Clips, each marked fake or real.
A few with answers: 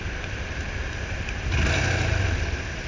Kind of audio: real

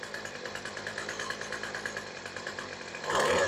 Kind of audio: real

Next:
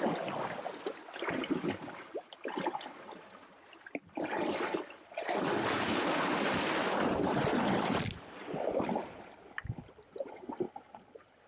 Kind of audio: real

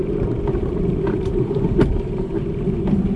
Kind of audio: fake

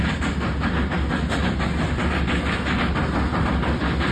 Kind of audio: real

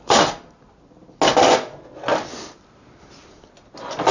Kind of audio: real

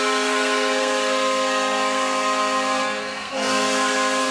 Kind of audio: fake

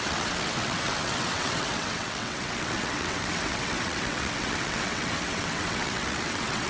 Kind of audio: fake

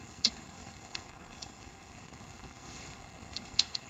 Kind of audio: fake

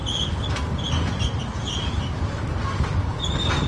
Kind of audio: real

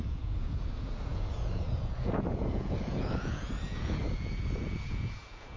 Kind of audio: fake